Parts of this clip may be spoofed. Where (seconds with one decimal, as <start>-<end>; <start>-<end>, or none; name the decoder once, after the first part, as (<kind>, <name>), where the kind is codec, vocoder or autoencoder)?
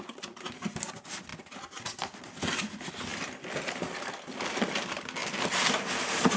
none